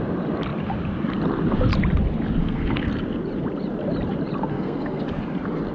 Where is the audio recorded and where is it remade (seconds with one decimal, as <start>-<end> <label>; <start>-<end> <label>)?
0.0-2.4 recorded; 2.4-2.9 remade; 2.9-4.5 recorded; 4.5-5.0 remade; 5.0-5.7 recorded